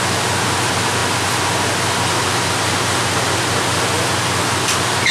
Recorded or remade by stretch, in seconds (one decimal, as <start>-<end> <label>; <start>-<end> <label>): 0.0-5.1 recorded